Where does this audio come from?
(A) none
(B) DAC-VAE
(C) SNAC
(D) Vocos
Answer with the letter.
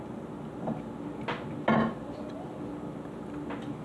A